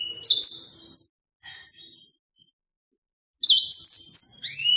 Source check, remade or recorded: recorded